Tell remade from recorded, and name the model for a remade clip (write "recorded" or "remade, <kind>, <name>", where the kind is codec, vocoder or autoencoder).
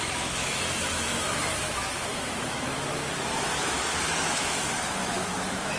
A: remade, autoencoder, DAC-VAE